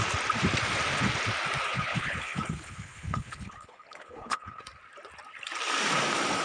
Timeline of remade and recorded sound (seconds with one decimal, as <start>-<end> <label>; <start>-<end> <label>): 0.0-1.7 recorded; 1.7-4.6 remade; 4.6-6.4 recorded